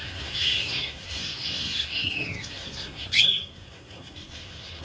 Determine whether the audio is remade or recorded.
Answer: remade